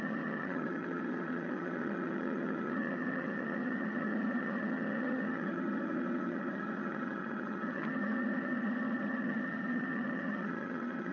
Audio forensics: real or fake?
fake